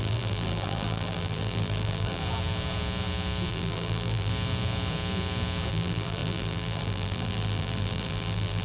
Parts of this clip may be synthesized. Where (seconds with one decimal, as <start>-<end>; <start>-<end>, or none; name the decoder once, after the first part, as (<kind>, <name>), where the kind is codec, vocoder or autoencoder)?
0.0-2.2 (vocoder, BigVGAN v2); 3.5-4.3; 5.7-8.6